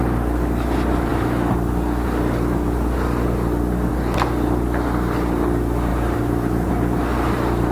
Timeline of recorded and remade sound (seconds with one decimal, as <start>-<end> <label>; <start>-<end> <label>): 0.0-5.9 recorded; 5.9-6.7 remade; 6.7-7.7 recorded